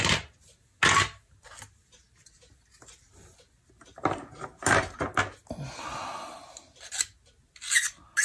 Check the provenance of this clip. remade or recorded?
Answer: recorded